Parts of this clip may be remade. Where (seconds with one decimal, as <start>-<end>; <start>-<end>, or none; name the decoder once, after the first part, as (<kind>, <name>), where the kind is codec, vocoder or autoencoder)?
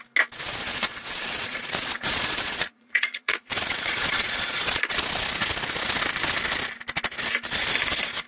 0.7-5.0 (vocoder, Vocos)